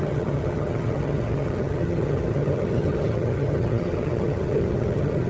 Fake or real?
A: fake